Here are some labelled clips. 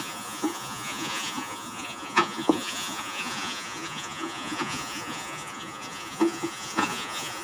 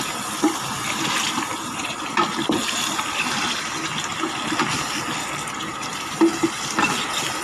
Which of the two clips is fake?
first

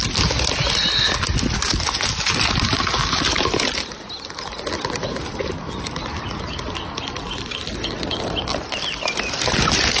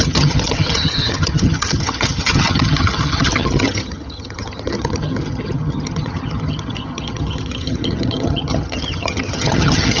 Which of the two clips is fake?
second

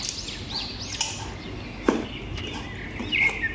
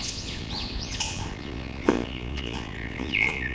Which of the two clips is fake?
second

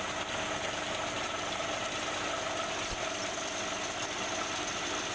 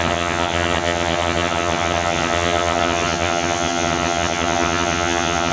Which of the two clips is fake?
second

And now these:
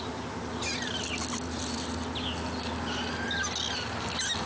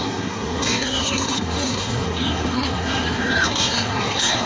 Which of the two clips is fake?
second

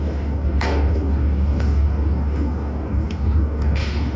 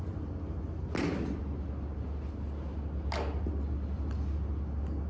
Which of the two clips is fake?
first